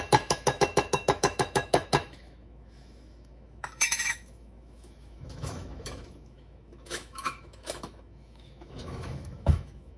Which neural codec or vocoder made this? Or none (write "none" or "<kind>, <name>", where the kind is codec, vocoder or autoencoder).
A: autoencoder, DAC-VAE